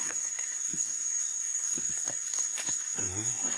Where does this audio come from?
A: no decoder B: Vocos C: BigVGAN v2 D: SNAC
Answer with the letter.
D